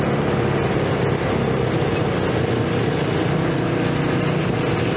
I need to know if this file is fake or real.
real